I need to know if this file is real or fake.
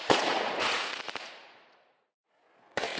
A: fake